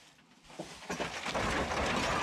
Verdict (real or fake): real